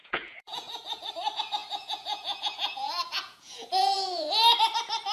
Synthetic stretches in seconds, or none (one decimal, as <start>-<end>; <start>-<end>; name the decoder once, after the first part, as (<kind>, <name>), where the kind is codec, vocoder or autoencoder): 0.0-1.1 (vocoder, Vocos); 1.6-4.3